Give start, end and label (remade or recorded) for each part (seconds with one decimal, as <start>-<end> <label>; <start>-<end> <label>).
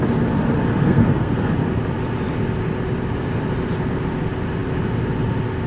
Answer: 0.0-0.8 recorded; 0.8-1.5 remade; 1.5-5.7 recorded